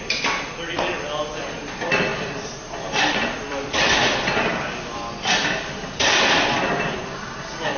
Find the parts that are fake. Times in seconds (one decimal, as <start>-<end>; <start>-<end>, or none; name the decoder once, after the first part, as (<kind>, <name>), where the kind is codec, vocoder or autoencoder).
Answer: 2.1-6.1 (vocoder, BigVGAN v2)